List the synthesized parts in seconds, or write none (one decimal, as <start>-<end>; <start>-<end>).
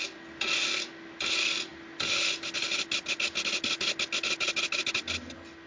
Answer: none